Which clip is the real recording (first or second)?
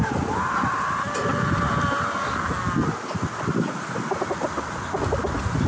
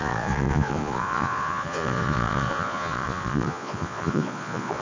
first